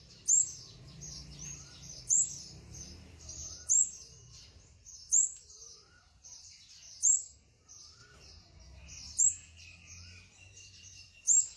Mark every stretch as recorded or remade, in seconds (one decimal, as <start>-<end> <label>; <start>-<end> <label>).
0.0-8.0 remade; 8.0-9.2 recorded; 9.2-11.6 remade